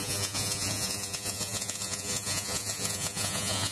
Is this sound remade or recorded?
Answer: remade